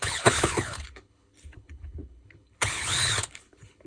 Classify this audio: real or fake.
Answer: fake